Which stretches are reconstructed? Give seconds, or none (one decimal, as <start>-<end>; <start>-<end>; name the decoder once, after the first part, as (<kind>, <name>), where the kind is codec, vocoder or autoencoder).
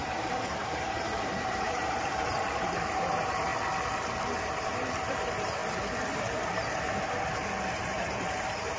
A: 0.0-3.5 (vocoder, BigVGAN v2); 5.1-5.6; 7.6-8.8